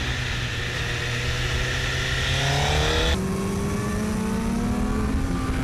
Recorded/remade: recorded